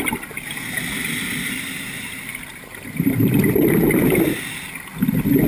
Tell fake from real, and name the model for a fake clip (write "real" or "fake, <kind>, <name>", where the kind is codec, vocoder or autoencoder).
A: real